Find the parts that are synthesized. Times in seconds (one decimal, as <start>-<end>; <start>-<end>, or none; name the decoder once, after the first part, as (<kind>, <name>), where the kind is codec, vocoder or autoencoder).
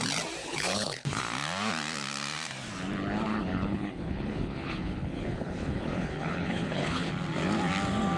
0.4-1.2 (codec, HILCodec); 3.3-7.1